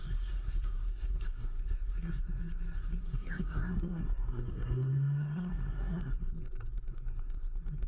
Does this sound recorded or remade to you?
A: remade